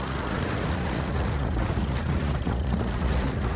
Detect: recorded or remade remade